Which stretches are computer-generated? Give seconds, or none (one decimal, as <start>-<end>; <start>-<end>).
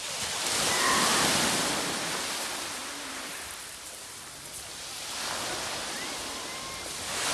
none